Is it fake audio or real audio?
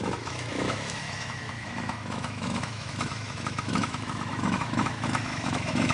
fake